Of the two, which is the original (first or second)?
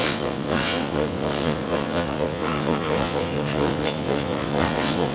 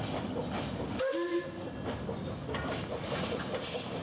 second